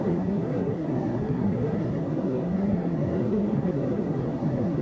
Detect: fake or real fake